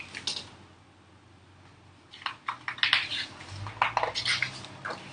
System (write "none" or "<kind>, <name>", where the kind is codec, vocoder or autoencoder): none